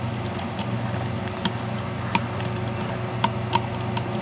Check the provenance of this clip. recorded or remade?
recorded